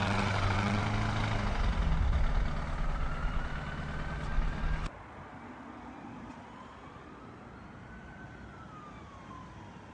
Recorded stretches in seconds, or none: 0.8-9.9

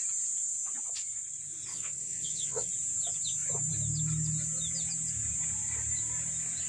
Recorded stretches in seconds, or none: 0.0-1.7; 2.7-6.7